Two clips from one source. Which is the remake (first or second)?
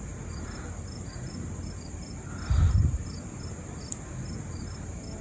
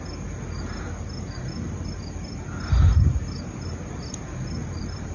first